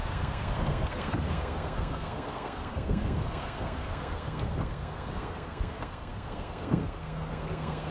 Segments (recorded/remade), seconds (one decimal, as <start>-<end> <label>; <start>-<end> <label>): 0.0-7.9 remade